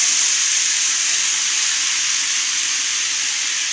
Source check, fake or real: real